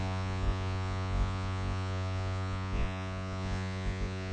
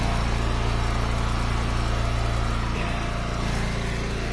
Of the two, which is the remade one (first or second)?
first